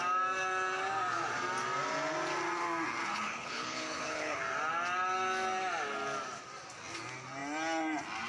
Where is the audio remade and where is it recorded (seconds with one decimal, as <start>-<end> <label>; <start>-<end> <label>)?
0.0-3.0 recorded; 3.0-4.4 remade; 4.4-8.3 recorded